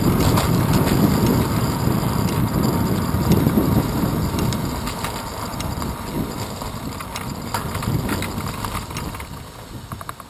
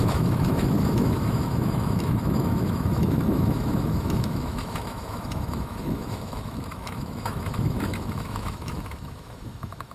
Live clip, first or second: first